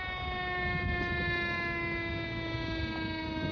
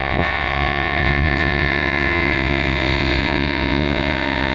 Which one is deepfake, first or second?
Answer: second